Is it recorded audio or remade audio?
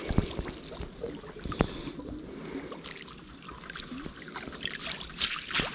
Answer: recorded